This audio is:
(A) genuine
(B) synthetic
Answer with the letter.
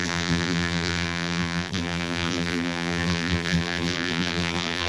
B